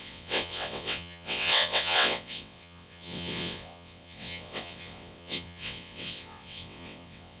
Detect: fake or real fake